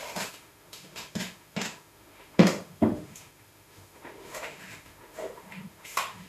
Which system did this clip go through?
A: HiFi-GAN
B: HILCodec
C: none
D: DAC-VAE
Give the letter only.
D